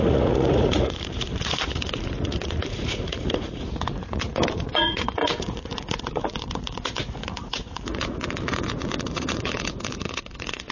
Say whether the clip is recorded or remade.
remade